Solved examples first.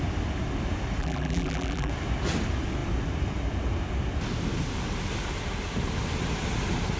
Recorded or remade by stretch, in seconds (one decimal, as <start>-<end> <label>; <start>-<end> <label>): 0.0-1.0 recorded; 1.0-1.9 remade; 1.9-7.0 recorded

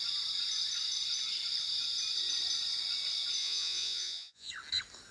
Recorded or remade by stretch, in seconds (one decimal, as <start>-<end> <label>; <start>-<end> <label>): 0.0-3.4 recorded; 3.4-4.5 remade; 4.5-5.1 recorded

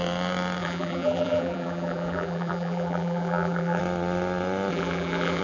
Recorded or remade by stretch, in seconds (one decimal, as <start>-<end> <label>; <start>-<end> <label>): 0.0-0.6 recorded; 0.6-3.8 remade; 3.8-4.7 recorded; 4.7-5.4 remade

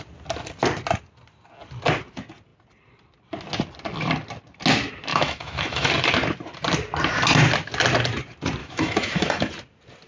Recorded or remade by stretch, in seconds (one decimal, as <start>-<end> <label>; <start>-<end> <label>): 0.0-5.1 recorded; 5.1-5.9 remade; 5.9-8.6 recorded; 8.6-9.5 remade; 9.5-10.1 recorded